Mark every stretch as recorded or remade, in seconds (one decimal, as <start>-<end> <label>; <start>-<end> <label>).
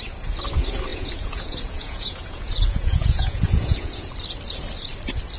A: 0.0-0.9 recorded; 0.9-4.1 remade; 4.1-5.4 recorded